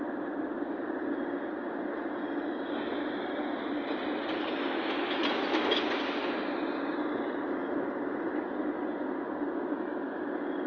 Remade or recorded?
recorded